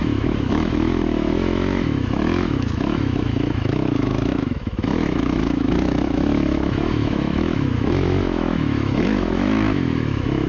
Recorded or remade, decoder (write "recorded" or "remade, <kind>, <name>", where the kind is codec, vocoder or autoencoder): remade, autoencoder, DAC-VAE